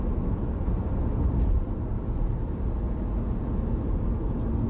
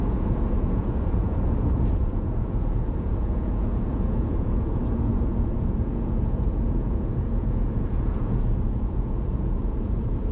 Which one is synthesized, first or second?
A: second